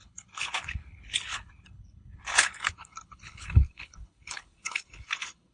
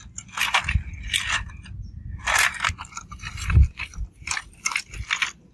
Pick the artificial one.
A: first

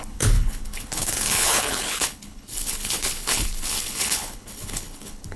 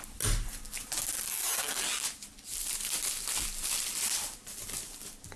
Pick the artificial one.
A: first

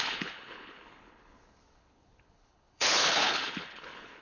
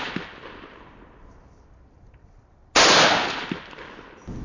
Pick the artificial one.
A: first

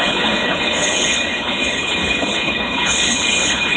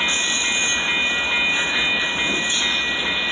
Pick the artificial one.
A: first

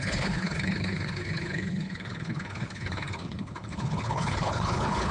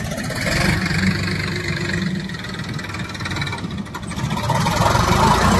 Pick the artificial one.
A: first